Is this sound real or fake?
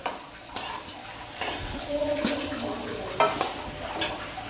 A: real